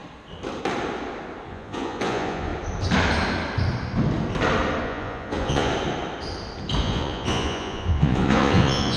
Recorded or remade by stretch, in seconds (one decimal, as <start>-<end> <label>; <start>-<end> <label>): 0.0-1.5 recorded; 1.5-2.5 remade; 2.5-4.8 recorded; 4.8-5.7 remade; 5.7-6.8 recorded; 6.8-9.0 remade